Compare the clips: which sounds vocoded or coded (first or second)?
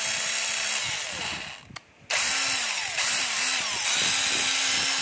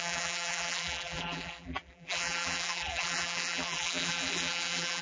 second